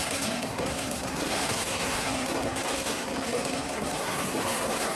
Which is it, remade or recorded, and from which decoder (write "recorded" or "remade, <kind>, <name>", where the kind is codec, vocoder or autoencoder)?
remade, codec, SNAC